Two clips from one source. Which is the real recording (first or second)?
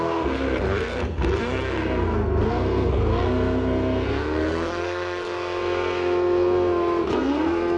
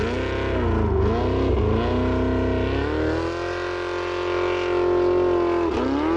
second